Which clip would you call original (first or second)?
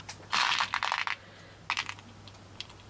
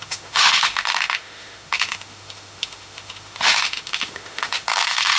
first